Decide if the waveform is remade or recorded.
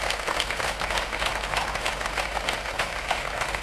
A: remade